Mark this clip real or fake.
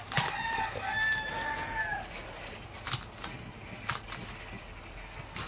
real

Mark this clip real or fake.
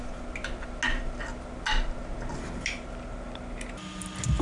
real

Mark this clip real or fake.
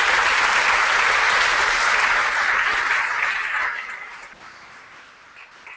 real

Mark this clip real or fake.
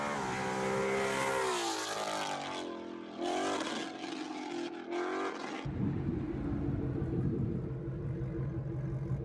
real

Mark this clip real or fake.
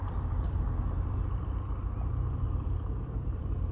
fake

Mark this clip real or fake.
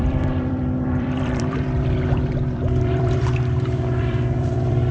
fake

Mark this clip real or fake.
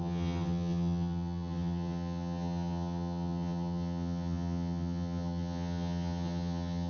fake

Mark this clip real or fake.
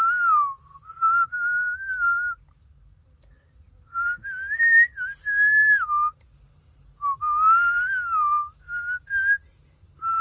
real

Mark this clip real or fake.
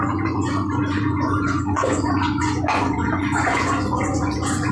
fake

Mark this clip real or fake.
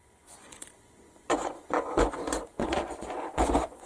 fake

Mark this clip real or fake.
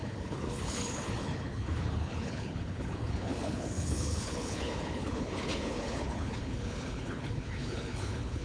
fake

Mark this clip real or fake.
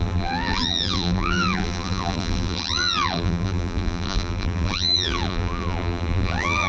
fake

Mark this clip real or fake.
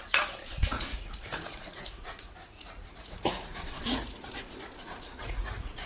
fake